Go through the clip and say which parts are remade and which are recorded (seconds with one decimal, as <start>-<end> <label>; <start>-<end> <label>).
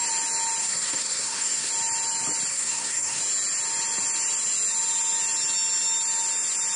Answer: 0.0-0.6 recorded; 0.6-1.7 remade; 1.7-2.5 recorded; 2.5-3.2 remade; 3.2-6.8 recorded